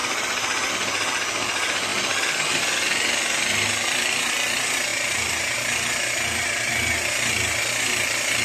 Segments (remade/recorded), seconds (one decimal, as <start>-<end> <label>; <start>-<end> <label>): 0.0-4.9 recorded; 4.9-6.7 remade; 6.7-8.4 recorded